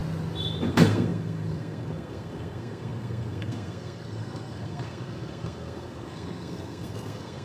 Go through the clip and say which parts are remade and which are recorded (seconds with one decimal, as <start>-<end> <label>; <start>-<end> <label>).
0.0-0.7 recorded; 0.7-7.4 remade